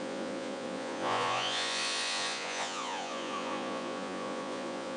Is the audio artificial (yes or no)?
yes